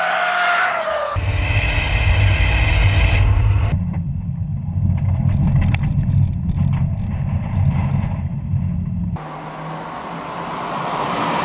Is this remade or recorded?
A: recorded